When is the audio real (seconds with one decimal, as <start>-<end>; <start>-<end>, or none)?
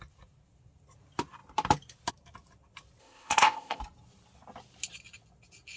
0.0-3.0; 3.8-5.8